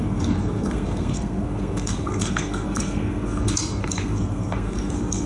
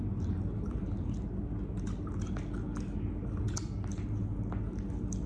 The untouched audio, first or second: second